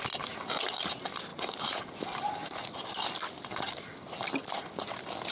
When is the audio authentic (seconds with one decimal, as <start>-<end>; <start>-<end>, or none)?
0.0-1.3; 1.8-5.3